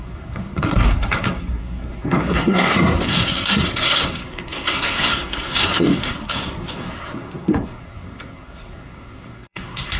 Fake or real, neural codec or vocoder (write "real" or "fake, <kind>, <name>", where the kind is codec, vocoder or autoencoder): fake, codec, SNAC